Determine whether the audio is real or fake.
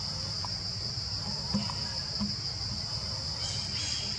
real